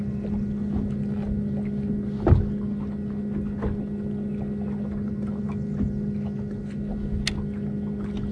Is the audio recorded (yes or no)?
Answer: yes